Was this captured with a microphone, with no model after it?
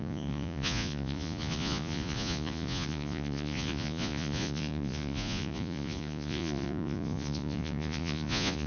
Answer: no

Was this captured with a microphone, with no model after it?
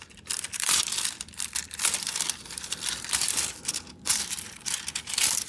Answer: no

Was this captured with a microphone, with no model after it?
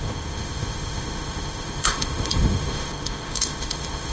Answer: no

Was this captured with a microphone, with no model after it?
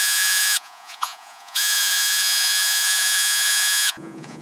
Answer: no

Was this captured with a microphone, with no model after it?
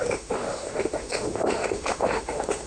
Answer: no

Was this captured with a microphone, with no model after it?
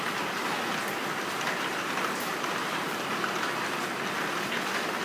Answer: yes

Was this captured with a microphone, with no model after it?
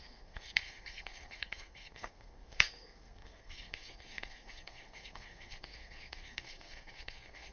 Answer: no